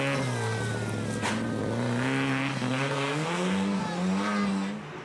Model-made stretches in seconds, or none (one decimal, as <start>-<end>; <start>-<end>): 2.5-3.8